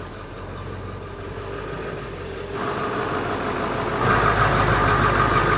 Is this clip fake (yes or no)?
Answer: no